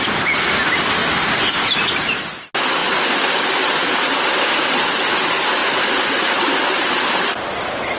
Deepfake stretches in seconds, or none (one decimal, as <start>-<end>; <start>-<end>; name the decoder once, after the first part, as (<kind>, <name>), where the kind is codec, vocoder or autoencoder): 1.0-2.2 (vocoder, BigVGAN v2); 2.8-4.7